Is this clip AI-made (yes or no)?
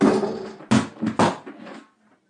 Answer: no